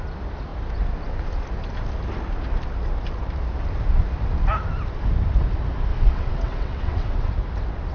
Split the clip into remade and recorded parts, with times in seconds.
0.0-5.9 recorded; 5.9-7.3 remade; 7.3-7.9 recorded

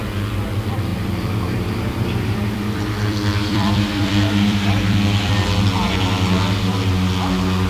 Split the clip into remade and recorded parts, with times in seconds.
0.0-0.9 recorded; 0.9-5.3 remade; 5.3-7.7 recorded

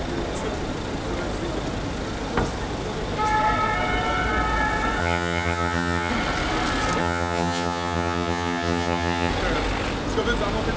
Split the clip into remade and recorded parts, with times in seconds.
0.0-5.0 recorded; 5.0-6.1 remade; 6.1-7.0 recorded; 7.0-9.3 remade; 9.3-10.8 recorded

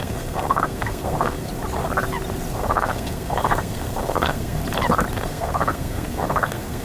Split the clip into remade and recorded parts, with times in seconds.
0.0-1.5 remade; 1.5-2.5 recorded; 2.5-4.6 remade; 4.6-5.1 recorded; 5.1-6.8 remade